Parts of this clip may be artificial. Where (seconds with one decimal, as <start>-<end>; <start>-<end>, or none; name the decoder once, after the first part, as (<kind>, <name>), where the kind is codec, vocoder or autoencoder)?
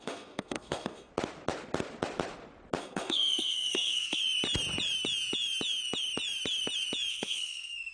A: 0.0-1.1 (codec, SNAC); 2.8-4.2; 7.1-7.9